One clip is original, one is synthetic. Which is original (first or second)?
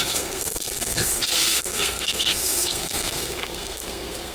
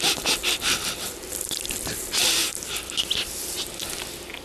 second